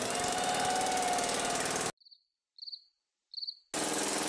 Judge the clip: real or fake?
real